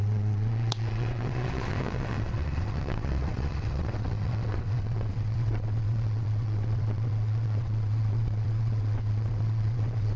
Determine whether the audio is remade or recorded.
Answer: remade